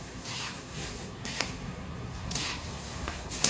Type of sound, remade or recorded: remade